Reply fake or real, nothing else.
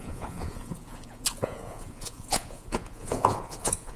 fake